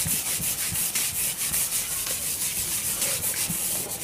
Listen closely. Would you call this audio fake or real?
real